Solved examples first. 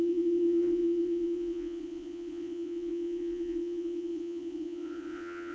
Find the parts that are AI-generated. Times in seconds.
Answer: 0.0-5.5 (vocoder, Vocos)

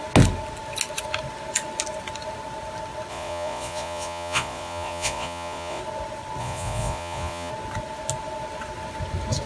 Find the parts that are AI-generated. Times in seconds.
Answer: 3.1-5.8 (vocoder, Vocos); 6.4-7.5

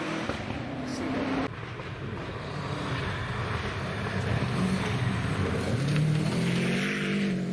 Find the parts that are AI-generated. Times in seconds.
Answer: none

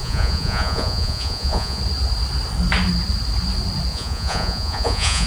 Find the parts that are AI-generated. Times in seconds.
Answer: 0.0-1.8 (vocoder, Vocos); 3.9-5.3

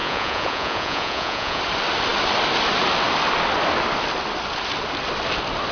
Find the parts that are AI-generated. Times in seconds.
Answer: 0.0-1.6 (vocoder, Vocos)

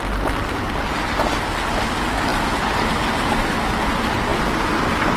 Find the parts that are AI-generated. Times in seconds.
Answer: none